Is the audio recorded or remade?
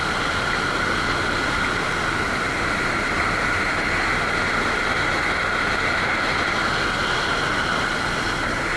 recorded